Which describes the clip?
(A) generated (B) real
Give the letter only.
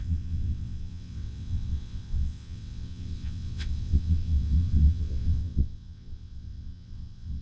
A